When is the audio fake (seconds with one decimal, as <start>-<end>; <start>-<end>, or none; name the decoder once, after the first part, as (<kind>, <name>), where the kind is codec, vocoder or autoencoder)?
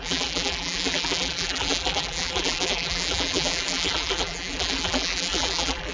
0.0-5.9 (vocoder, BigVGAN v2)